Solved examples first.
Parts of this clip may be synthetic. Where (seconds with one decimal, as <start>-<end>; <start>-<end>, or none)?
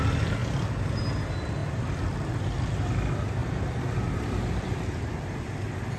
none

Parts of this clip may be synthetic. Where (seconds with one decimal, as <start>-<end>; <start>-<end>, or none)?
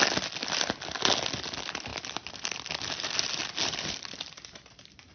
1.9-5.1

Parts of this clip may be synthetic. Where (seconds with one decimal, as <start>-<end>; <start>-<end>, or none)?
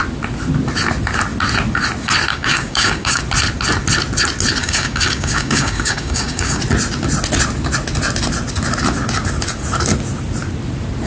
2.3-3.2; 4.6-6.6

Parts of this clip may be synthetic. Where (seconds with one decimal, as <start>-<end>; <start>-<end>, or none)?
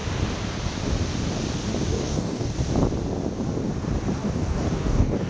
1.9-2.5; 4.2-5.3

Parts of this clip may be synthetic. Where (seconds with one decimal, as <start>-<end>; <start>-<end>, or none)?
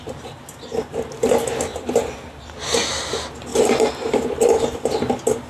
none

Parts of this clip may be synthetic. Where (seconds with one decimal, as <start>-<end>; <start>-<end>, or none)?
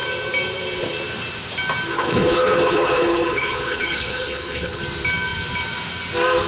1.9-4.8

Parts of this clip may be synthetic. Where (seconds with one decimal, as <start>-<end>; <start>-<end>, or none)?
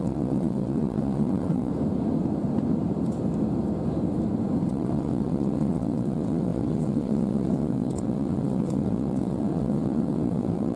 0.0-1.7; 4.7-10.8